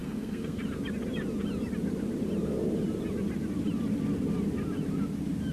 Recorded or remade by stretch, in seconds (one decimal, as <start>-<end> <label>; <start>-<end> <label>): 0.0-0.6 remade; 0.6-5.5 recorded